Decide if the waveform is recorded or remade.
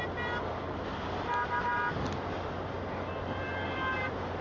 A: recorded